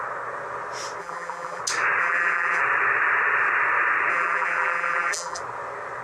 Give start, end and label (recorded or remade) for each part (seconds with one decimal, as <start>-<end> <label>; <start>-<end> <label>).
0.0-1.0 recorded; 1.0-1.6 remade; 1.6-2.0 recorded; 2.0-2.6 remade; 2.6-4.1 recorded; 4.1-5.4 remade; 5.4-6.0 recorded